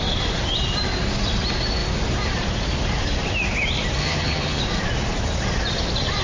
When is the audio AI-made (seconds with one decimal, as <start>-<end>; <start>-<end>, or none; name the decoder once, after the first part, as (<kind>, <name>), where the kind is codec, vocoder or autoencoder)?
4.0-4.6 (vocoder, HiFi-GAN)